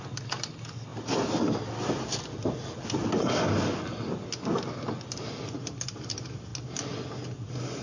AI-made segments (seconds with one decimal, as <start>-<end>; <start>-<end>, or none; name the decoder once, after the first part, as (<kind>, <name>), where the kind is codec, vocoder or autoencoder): none